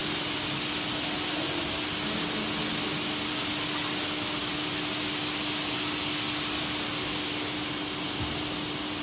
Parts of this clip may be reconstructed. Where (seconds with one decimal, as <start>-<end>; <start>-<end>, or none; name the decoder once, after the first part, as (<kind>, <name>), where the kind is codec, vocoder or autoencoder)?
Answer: none